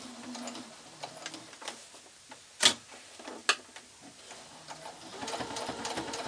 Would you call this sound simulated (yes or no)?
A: no